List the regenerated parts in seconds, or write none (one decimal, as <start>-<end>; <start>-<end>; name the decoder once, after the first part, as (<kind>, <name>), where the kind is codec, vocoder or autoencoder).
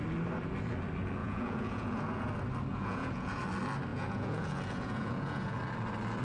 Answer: 1.2-2.3 (vocoder, Vocos); 2.7-3.4; 3.9-5.6